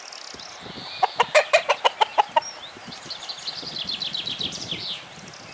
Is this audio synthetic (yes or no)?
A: no